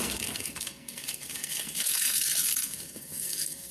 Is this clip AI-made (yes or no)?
yes